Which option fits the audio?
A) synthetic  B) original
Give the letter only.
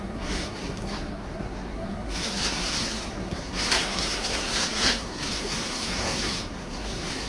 A